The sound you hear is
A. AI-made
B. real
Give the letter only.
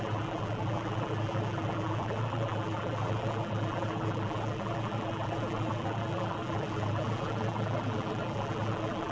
A